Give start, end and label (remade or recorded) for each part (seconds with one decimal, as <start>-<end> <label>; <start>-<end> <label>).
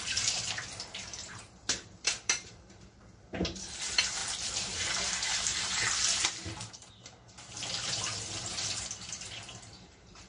0.0-10.3 remade